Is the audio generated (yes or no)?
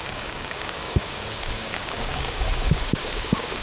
yes